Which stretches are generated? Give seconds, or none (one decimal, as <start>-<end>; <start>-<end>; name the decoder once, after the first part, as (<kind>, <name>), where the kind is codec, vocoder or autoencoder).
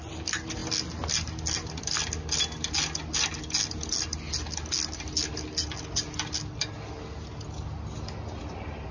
none